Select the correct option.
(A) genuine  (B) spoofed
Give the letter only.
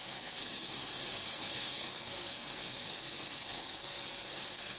B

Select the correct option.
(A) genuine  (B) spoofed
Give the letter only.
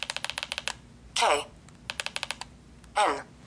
A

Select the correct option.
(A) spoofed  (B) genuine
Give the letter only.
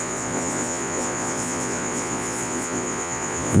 A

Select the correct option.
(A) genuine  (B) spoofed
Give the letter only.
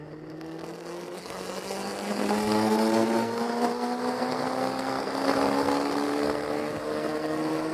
B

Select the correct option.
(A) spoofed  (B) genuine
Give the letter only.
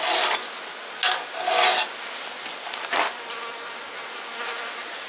B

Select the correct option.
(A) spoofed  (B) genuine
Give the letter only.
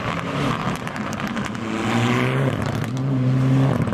B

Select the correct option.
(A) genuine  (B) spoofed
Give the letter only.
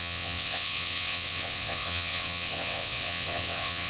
B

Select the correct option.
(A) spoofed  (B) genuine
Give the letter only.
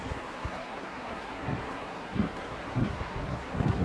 A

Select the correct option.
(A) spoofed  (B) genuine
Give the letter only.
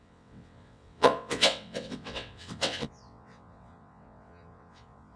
A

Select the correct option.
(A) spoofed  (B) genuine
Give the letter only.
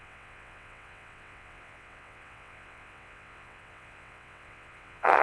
A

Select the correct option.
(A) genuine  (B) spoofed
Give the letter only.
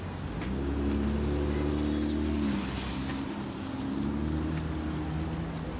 A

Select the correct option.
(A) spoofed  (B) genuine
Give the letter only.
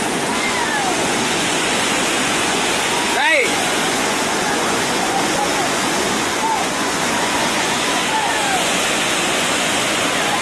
A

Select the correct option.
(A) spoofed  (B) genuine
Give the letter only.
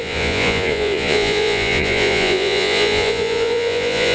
A